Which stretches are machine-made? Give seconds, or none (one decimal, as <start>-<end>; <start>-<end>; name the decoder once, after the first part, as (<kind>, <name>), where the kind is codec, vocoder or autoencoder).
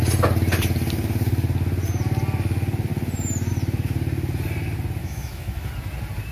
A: 5.0-5.7 (autoencoder, DAC-VAE)